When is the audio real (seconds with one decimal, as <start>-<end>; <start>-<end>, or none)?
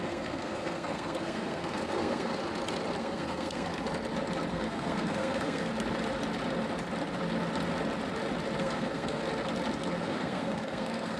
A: 2.3-3.0; 3.7-4.5; 5.7-8.6; 9.2-9.9